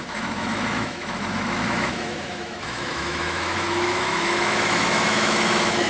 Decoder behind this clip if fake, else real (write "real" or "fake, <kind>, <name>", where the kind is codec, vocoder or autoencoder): fake, autoencoder, DAC-VAE